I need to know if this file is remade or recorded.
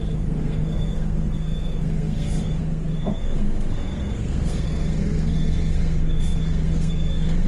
remade